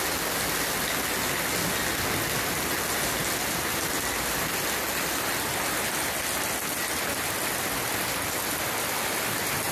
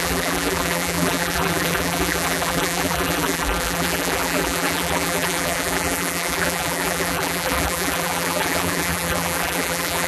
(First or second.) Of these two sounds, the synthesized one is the second